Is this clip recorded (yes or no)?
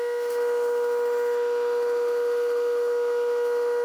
no